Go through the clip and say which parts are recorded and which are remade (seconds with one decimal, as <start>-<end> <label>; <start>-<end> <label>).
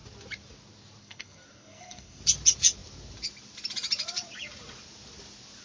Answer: 0.0-1.0 recorded; 1.0-2.2 remade; 2.2-5.6 recorded